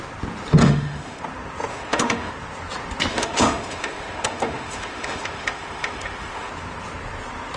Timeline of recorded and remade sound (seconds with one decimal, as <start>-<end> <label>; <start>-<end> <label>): 0.0-0.6 recorded; 0.6-1.2 remade; 1.2-1.7 recorded; 1.7-2.3 remade; 2.3-3.1 recorded; 3.1-6.5 remade; 6.5-7.6 recorded